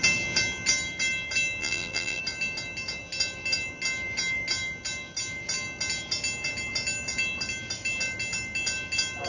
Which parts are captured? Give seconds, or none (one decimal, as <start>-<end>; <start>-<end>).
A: 0.0-1.6; 2.2-9.3